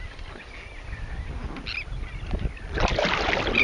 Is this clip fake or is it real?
real